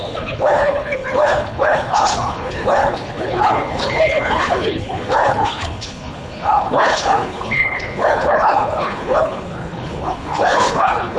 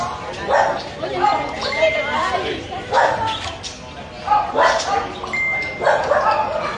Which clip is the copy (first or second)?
first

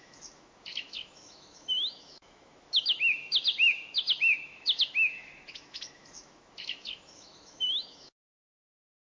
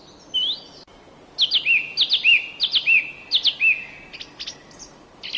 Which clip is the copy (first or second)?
first